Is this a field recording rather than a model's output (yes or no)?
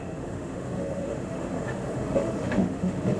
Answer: no